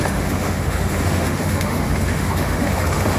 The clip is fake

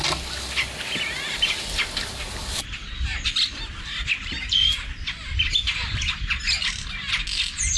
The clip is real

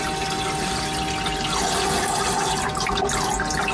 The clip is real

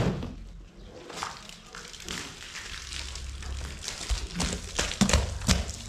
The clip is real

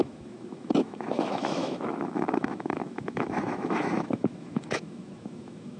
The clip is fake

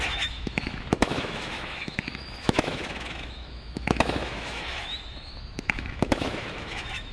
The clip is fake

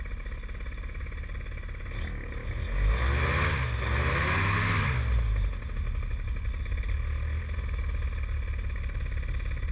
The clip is real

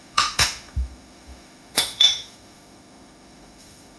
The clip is fake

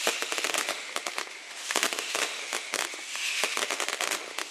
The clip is fake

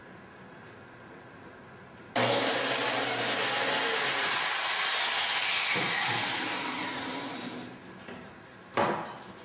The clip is real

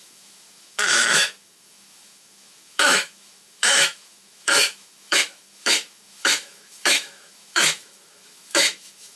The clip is fake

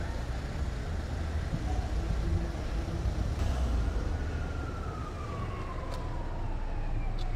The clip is real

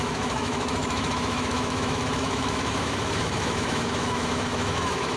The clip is fake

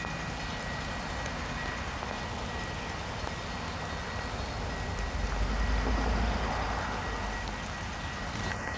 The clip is real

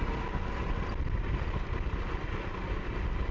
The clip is real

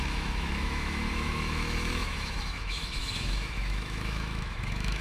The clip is fake